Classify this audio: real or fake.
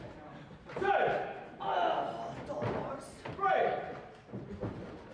real